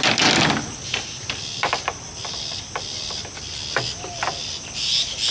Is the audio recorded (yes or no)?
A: yes